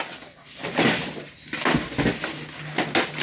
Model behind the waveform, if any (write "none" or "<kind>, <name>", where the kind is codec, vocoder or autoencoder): none